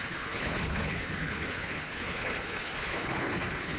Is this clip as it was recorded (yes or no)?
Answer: no